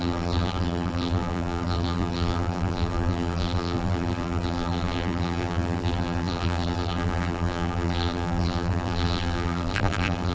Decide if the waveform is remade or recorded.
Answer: remade